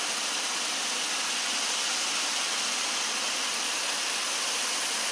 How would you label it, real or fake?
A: real